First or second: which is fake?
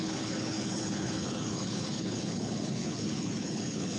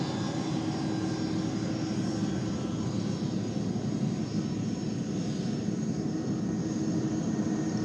first